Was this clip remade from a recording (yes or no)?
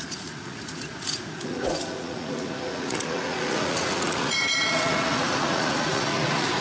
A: yes